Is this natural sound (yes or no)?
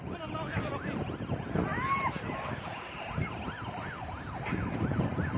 yes